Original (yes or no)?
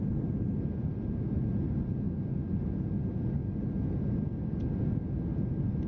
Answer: yes